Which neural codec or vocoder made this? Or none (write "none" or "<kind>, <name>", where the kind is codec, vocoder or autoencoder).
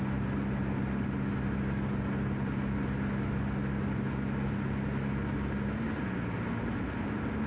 none